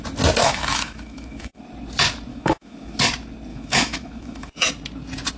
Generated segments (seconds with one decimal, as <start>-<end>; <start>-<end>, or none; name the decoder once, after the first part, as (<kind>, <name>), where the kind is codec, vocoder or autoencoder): 0.4-1.6 (autoencoder, DAC-VAE); 2.3-3.0; 3.5-4.7